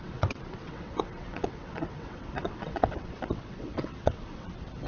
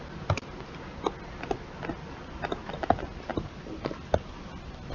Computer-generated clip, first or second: first